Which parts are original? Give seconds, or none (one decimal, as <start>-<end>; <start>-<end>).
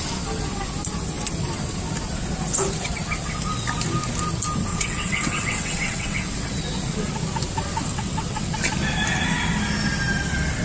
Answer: 0.0-4.7; 6.2-7.9; 8.5-10.6